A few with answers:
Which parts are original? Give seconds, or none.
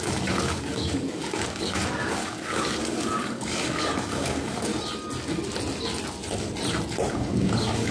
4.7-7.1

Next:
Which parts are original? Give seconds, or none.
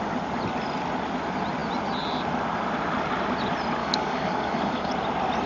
0.0-3.8; 4.9-5.5